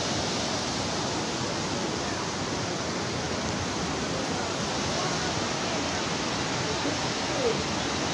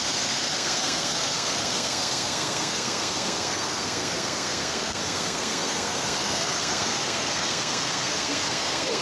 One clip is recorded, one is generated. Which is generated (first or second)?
second